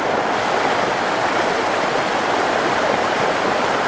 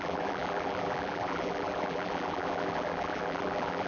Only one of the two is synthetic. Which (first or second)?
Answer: second